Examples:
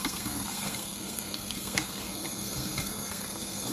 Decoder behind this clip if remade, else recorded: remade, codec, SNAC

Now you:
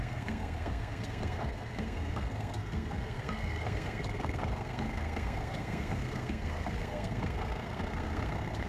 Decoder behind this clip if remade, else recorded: remade, codec, SNAC